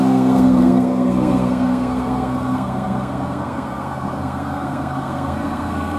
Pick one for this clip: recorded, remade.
remade